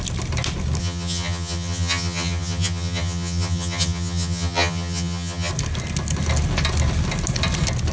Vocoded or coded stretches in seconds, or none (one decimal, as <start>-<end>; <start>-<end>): 0.8-5.5